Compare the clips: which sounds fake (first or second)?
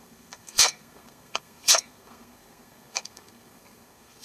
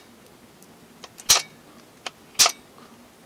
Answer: first